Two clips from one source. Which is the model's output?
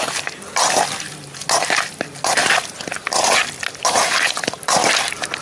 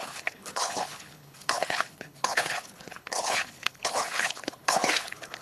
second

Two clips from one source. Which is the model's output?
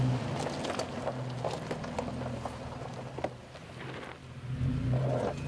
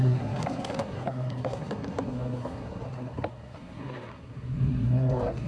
second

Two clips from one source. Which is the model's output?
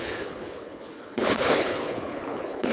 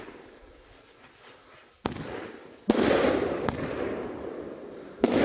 first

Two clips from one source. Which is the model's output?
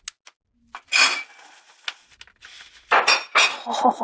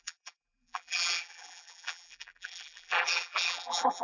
second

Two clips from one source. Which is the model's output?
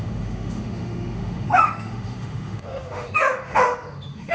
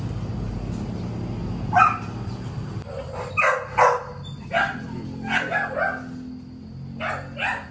first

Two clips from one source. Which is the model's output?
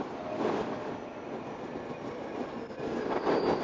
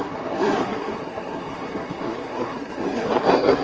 second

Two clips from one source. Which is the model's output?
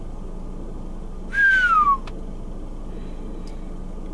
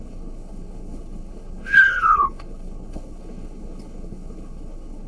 second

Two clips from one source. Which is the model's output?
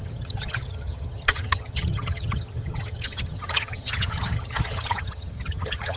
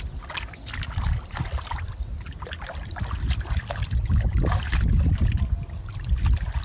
first